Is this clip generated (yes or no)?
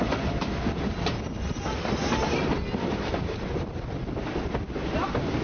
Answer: no